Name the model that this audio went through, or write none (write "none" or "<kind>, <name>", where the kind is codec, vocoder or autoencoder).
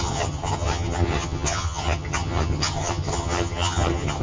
vocoder, HiFi-GAN